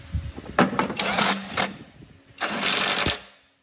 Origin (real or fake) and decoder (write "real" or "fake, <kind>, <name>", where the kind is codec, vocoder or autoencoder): real